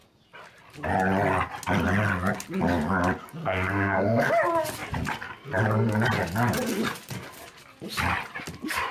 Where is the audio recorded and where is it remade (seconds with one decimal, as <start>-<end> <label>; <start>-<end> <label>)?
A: 0.0-3.4 recorded; 3.4-4.3 remade; 4.3-8.9 recorded